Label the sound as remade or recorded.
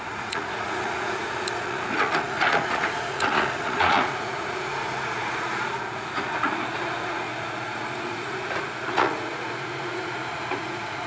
remade